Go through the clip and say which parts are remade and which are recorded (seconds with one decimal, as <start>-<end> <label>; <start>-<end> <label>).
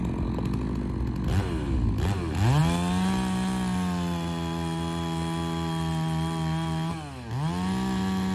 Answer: 0.0-8.3 recorded